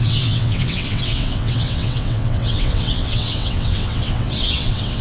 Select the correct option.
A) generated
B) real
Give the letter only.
A